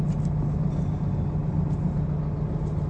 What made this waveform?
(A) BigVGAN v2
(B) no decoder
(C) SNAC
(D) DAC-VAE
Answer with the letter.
B